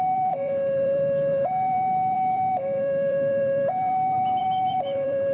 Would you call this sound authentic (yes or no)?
no